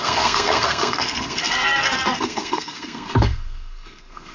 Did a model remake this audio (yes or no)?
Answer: yes